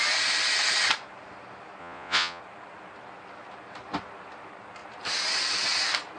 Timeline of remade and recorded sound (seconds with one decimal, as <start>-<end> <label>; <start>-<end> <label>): 0.0-1.8 recorded; 1.8-2.4 remade; 2.4-6.2 recorded